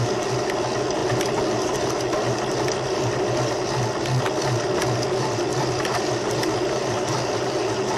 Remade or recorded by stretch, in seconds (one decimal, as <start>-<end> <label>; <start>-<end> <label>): 0.0-8.0 recorded